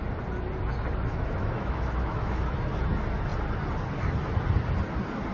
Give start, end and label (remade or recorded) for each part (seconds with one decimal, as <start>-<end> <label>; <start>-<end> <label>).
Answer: 0.0-1.1 recorded; 1.1-2.7 remade; 2.7-5.3 recorded